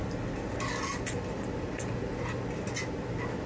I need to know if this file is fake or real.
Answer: real